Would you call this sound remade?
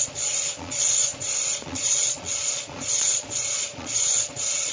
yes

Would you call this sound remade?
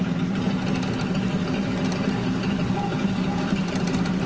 no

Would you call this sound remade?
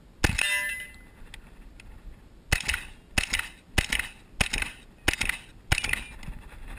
no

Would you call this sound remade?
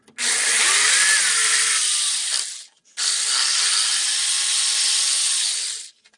no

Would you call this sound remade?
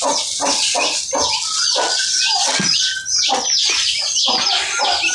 no